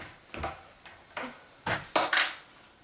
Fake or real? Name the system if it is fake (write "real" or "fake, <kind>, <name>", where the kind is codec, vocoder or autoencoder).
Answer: real